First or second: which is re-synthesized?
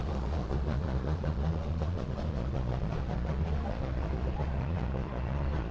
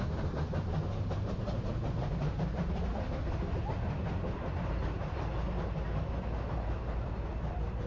first